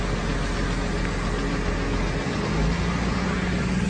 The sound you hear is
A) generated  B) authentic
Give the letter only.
B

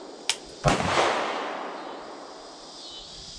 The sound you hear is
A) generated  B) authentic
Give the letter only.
B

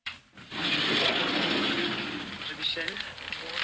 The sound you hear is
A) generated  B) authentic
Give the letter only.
A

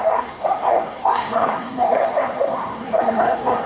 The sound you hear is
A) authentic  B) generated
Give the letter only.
B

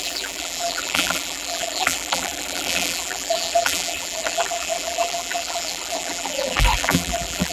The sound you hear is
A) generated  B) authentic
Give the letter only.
A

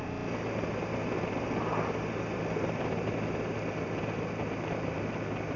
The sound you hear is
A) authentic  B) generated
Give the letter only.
A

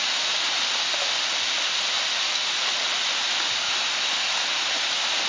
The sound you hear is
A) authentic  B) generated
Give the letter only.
A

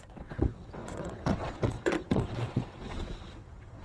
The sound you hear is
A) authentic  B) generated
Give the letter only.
B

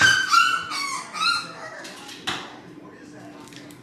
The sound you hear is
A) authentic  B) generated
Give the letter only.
A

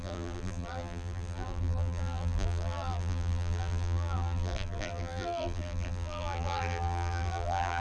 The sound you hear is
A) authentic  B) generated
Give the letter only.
B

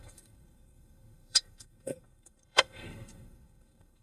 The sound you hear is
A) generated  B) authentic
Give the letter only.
A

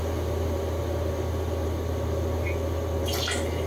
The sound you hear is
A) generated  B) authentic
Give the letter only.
B